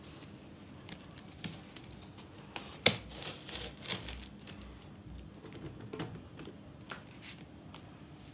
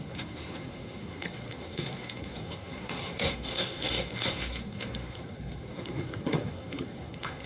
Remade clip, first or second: second